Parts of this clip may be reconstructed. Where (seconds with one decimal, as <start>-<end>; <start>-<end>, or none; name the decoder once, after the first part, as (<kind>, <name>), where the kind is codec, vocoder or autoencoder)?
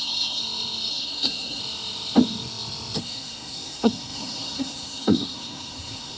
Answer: 0.0-0.4 (codec, SNAC); 0.9-1.6; 3.0-6.2